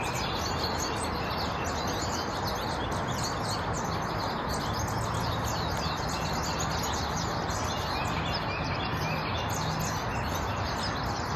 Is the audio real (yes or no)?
yes